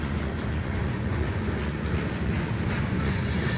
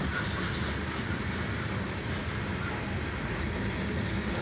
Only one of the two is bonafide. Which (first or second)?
second